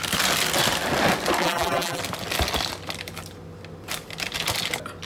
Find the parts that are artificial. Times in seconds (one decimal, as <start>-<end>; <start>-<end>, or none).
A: 1.4-2.0